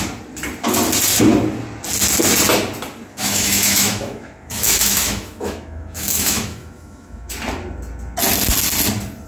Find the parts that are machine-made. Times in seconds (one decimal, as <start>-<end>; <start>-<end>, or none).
3.1-7.3